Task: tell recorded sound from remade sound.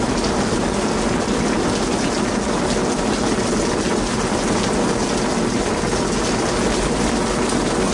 recorded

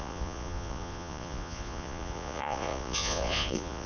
remade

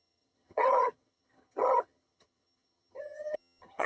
remade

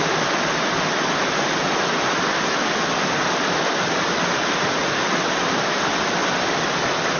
recorded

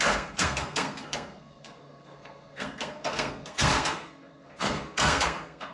remade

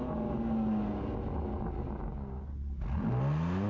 recorded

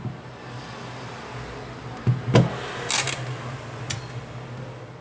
recorded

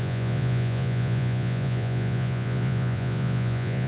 remade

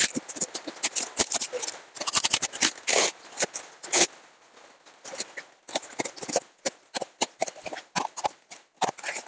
recorded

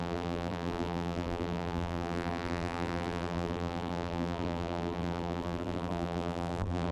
remade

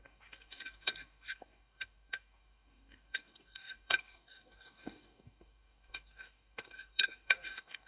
remade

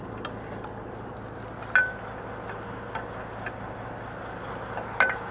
recorded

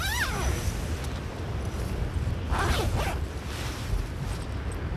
recorded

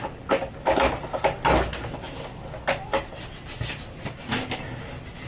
recorded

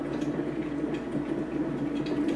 recorded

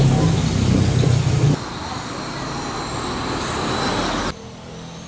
recorded